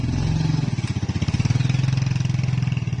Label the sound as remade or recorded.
recorded